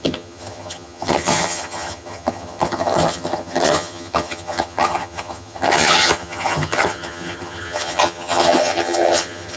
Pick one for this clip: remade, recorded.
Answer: remade